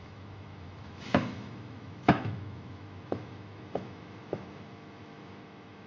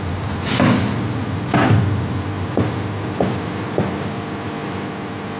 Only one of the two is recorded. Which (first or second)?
second